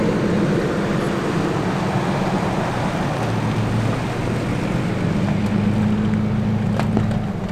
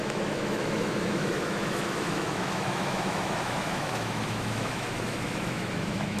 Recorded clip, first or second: first